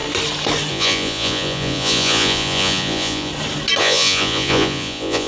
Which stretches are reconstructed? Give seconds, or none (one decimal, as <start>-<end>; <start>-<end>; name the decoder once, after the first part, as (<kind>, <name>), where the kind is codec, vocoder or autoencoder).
0.7-3.3 (vocoder, Vocos); 3.8-5.3